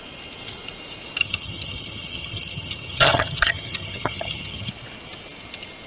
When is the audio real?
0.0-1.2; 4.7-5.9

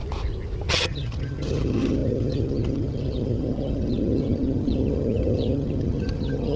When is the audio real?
0.0-0.7

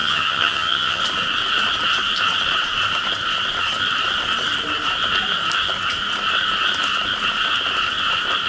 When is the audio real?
1.0-8.5

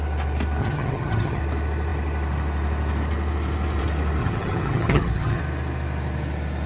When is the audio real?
0.0-0.6; 1.4-4.2; 5.4-6.7

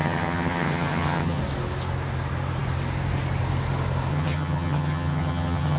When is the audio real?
1.4-4.1